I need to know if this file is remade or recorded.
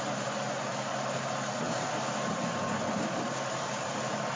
recorded